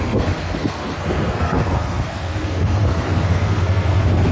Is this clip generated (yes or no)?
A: yes